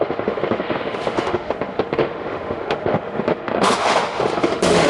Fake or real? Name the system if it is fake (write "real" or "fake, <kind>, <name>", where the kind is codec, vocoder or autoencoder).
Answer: fake, autoencoder, DAC-VAE